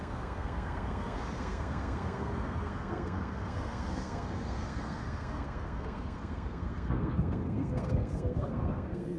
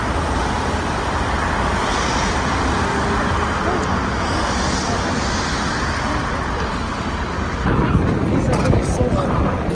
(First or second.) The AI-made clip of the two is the first